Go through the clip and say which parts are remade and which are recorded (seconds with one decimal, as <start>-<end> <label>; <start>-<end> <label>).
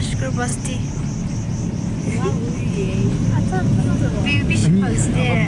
0.0-5.5 recorded